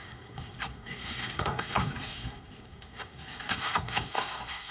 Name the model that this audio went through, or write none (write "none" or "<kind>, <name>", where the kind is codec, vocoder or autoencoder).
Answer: codec, SNAC